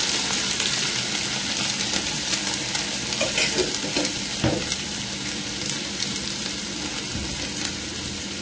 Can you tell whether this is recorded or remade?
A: recorded